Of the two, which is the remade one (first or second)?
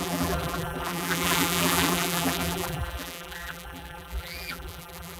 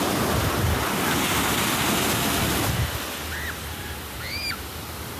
first